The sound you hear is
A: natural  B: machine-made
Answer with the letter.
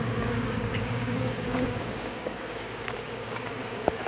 B